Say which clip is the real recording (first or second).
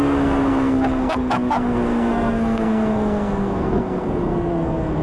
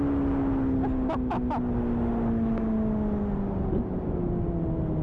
second